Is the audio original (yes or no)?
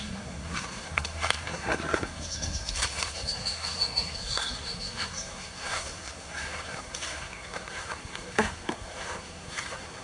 no